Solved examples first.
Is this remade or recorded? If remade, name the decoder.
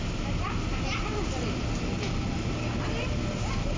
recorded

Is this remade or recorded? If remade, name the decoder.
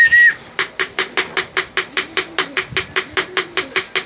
recorded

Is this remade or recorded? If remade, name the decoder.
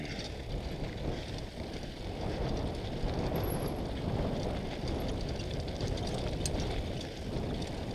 recorded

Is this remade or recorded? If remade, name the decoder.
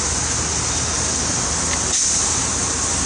recorded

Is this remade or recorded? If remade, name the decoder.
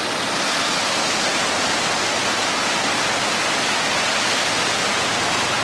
recorded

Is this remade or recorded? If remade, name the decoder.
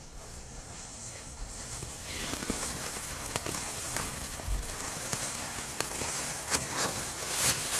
remade, codec, SNAC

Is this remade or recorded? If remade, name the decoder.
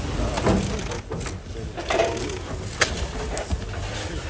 recorded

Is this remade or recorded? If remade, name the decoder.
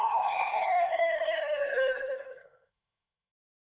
remade, codec, SNAC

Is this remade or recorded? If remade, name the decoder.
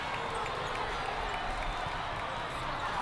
recorded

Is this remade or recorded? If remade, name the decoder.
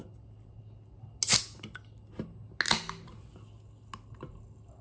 recorded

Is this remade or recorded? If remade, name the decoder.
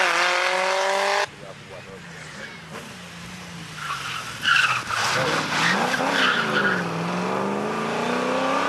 recorded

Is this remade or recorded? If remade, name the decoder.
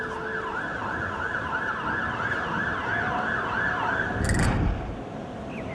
recorded